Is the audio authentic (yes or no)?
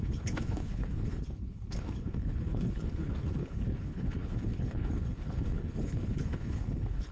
no